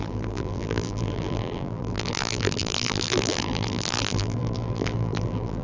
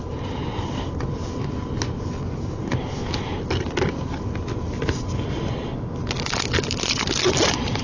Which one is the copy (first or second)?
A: first